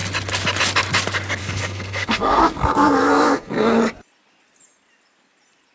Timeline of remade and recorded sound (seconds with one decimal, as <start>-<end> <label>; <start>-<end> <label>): 0.0-1.4 recorded; 1.4-3.8 remade; 3.8-5.7 recorded